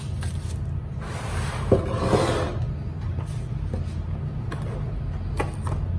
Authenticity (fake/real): real